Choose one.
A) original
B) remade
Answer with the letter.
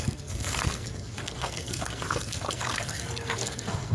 B